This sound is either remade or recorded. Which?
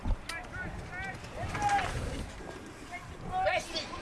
recorded